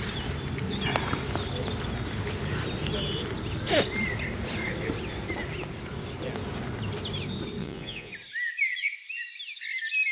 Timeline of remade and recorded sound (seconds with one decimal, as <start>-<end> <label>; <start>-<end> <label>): 0.0-7.6 recorded; 7.6-8.1 remade; 8.1-10.1 recorded